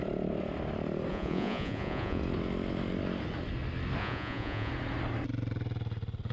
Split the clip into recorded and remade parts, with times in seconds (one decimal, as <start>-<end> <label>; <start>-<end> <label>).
0.0-1.1 recorded; 1.1-2.2 remade; 2.2-4.0 recorded; 4.0-4.7 remade; 4.7-6.3 recorded